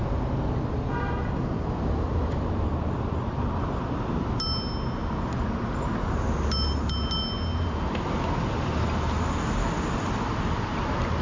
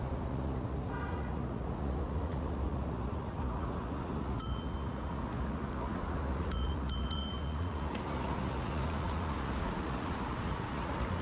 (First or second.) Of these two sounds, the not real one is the second